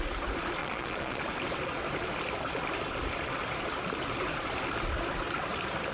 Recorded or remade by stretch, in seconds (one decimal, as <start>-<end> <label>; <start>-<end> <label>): 0.0-0.6 recorded; 0.6-1.2 remade; 1.2-5.9 recorded